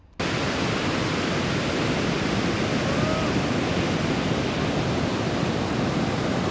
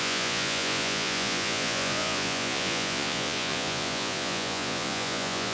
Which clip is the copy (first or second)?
second